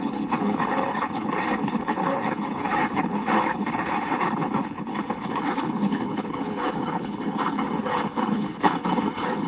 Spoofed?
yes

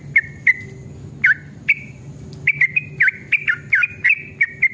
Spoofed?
no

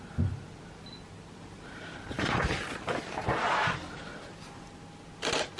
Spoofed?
no